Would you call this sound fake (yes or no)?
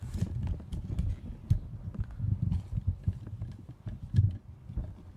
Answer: no